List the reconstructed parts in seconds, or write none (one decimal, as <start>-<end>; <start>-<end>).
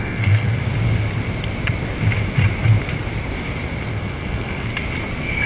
0.0-0.6; 3.9-4.7